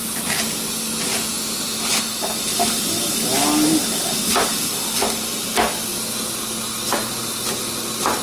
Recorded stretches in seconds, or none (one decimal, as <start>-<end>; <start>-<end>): 0.0-8.2